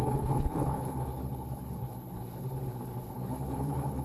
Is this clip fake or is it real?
fake